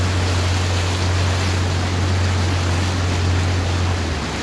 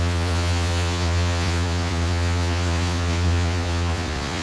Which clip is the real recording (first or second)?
first